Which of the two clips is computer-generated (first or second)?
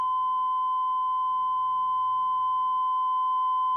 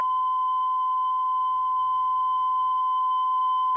second